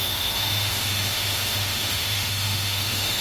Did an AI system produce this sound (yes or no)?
yes